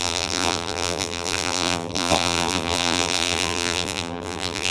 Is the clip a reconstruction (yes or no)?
yes